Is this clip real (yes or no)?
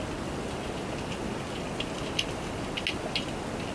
yes